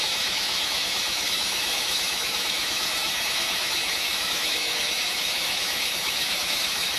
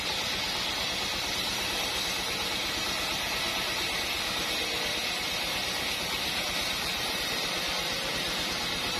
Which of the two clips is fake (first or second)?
first